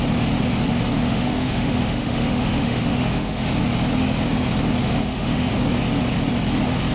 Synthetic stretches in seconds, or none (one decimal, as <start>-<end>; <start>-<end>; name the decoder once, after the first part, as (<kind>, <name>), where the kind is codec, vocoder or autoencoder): 1.0-3.6 (autoencoder, DAC-VAE); 4.8-5.6